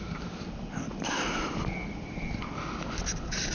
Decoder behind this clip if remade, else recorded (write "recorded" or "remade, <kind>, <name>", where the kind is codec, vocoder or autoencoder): recorded